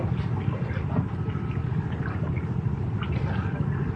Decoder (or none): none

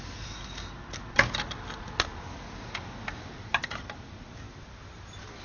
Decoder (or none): none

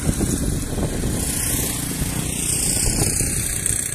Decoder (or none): none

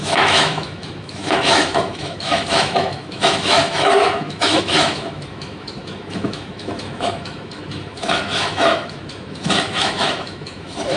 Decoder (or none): autoencoder, DAC-VAE